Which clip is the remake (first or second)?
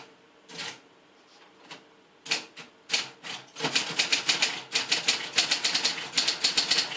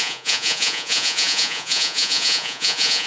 second